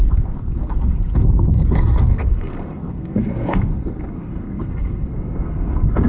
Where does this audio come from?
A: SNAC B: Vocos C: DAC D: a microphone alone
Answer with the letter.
A